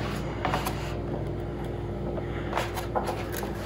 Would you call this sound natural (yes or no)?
yes